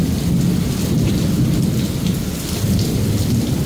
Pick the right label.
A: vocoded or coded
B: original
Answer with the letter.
B